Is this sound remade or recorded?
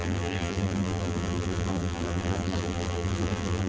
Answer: remade